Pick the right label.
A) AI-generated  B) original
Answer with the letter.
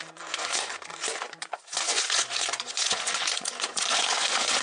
A